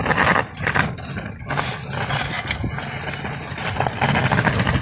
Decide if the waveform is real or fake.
real